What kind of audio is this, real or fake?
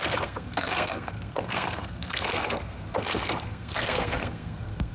fake